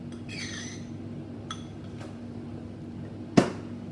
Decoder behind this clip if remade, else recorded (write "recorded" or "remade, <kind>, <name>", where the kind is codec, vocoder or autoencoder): recorded